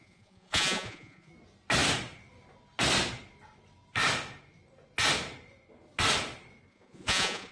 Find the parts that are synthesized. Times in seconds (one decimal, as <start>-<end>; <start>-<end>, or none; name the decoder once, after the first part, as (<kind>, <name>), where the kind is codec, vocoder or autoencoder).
0.0-1.3 (vocoder, Vocos); 6.7-7.5